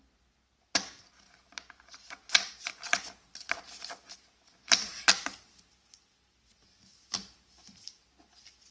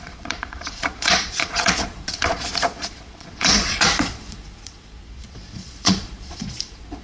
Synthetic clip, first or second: second